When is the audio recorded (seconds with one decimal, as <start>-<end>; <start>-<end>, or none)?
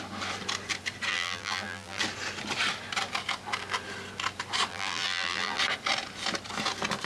0.0-1.1; 2.0-4.7; 5.6-7.1